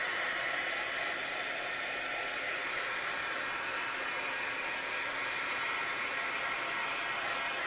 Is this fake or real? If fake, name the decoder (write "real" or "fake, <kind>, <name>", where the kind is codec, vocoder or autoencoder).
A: real